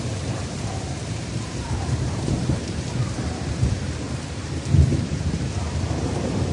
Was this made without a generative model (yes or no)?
no